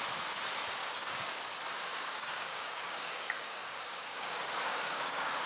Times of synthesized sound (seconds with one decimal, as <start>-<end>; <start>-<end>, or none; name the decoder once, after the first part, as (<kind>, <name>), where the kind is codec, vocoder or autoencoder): 0.8-1.4 (codec, DAC); 1.9-5.5